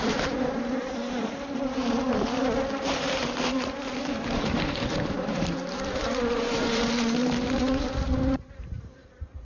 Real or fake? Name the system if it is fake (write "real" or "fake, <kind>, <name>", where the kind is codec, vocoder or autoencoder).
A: fake, vocoder, BigVGAN v2